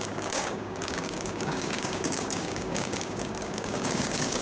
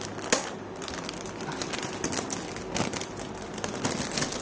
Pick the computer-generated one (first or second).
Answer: first